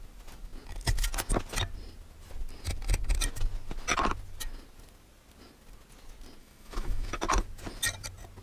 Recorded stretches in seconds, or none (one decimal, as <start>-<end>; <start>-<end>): 0.0-6.4; 7.2-8.4